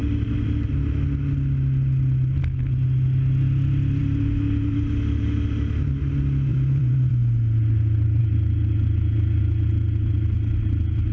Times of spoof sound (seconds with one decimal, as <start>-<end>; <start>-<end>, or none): 6.5-7.1